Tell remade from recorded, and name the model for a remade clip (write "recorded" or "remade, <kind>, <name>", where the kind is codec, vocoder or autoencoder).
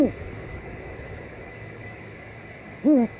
remade, codec, DAC